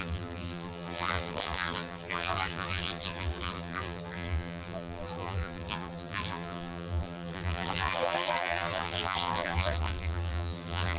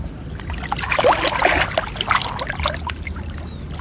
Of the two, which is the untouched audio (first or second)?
second